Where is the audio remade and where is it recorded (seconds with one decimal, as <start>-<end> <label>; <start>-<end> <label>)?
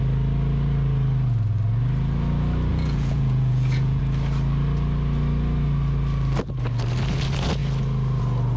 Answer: 0.0-2.7 recorded; 2.7-4.0 remade; 4.0-8.6 recorded